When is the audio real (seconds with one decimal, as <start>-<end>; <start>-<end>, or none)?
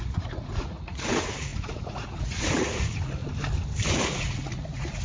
3.2-3.9